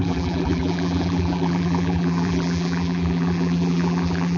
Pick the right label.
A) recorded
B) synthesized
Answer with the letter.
B